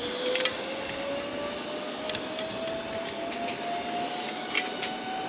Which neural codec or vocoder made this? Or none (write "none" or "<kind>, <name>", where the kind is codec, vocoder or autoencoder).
none